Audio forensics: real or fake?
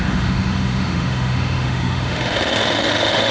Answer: fake